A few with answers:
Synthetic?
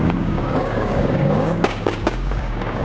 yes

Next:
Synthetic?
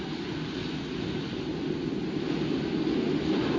no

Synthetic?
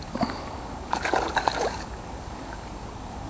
yes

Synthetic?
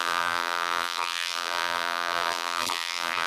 yes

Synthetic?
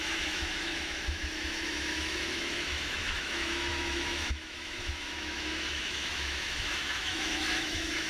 yes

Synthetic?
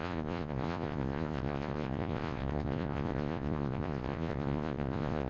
yes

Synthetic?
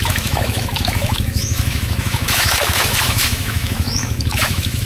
yes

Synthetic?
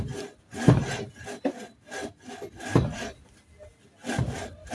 no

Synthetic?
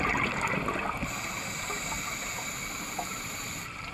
no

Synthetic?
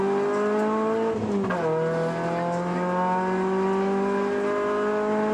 no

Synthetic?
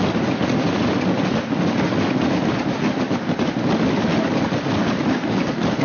no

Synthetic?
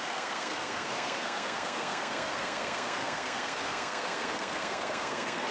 yes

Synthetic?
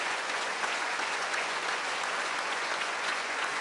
yes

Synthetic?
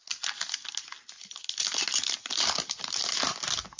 no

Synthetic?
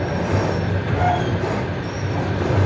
no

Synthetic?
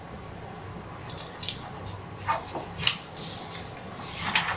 no